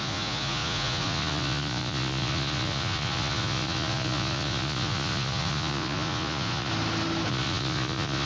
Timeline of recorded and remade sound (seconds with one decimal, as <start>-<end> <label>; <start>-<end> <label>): 0.0-6.7 remade; 6.7-7.3 recorded; 7.3-8.3 remade